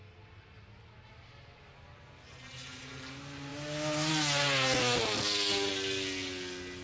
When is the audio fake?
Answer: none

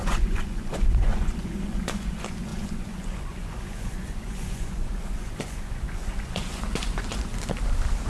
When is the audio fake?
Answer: 0.0-7.3 (vocoder, Vocos)